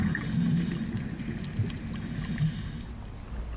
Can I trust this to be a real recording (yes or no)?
yes